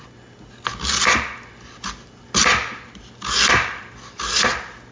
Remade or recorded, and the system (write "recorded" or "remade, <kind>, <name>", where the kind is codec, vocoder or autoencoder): recorded